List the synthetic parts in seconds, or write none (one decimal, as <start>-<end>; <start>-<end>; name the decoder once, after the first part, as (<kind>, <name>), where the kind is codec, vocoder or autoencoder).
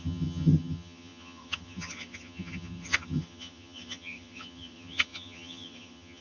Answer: 0.0-6.2 (vocoder, HiFi-GAN)